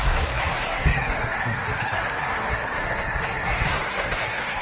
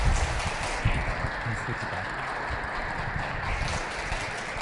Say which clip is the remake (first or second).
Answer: first